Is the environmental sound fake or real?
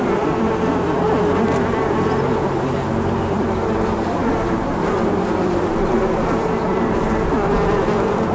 real